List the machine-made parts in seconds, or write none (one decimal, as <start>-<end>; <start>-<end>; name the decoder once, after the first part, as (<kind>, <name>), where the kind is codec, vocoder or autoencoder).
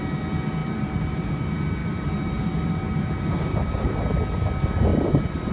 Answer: 0.6-1.3 (vocoder, BigVGAN v2); 1.8-4.2; 4.9-5.5